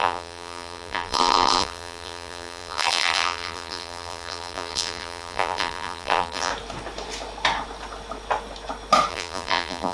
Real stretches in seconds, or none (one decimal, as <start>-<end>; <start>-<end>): 6.5-9.1